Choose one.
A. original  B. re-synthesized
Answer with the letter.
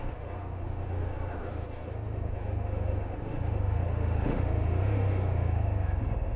B